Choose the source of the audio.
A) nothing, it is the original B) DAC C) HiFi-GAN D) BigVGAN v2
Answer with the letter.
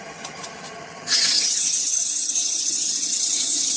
C